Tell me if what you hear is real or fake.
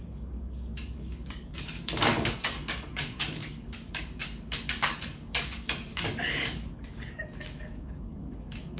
fake